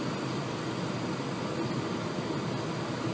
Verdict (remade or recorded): recorded